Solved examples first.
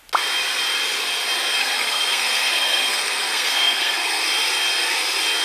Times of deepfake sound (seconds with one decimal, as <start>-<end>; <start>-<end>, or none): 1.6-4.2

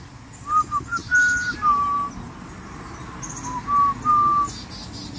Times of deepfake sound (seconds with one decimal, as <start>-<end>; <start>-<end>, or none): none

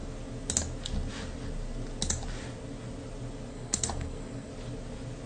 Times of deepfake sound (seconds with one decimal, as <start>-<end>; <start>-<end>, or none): 3.5-4.5

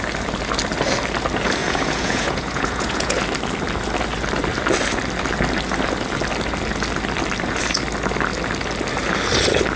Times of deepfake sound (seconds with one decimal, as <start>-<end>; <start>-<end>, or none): 1.6-3.2

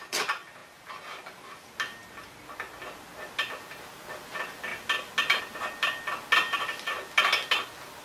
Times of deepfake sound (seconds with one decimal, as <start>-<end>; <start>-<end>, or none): none